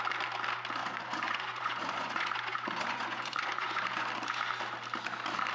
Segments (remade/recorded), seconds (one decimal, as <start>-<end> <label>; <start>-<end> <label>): 0.0-0.8 recorded; 0.8-4.1 remade; 4.1-5.5 recorded